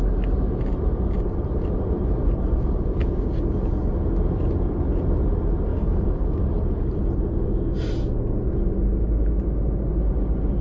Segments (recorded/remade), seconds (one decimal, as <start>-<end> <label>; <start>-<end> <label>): 0.0-5.7 recorded; 5.7-6.4 remade; 6.4-10.6 recorded